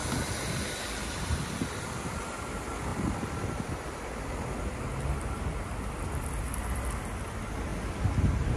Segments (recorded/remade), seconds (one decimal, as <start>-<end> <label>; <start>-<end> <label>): 0.0-0.8 remade; 0.8-8.6 recorded